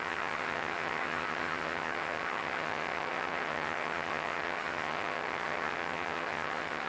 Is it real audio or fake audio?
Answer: fake